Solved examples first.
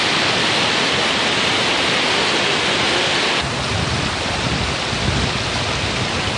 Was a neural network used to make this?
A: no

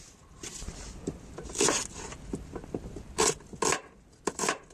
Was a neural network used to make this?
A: no